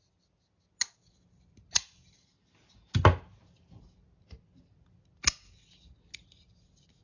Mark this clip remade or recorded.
recorded